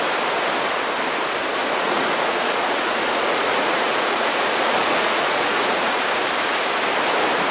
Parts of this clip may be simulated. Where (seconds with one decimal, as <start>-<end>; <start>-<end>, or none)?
1.6-6.0